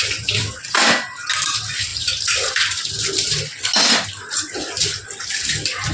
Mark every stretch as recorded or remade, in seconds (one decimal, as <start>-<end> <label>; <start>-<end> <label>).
0.0-5.9 recorded